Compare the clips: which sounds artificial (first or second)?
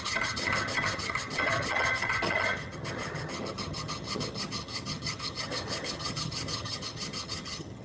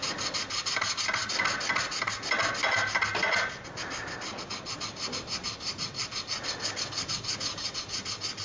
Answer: first